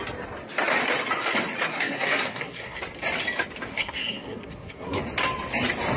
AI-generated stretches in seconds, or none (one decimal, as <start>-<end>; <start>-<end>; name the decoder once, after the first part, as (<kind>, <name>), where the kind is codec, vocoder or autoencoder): 1.7-2.8 (codec, SNAC); 3.7-5.0